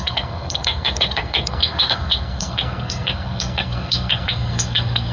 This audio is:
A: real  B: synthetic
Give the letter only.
B